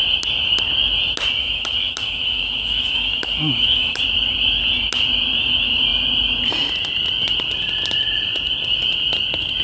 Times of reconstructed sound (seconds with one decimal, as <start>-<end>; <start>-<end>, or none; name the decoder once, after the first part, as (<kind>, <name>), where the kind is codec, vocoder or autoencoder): 1.4-4.0 (autoencoder, DAC-VAE)